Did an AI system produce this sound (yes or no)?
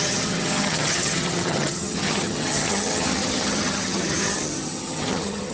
yes